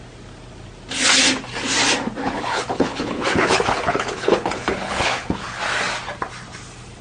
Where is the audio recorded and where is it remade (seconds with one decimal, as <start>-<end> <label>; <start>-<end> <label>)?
0.0-2.2 recorded; 2.2-5.6 remade; 5.6-7.0 recorded